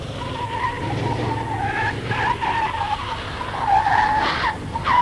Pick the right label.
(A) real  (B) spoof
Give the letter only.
A